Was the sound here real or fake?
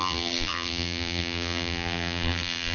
fake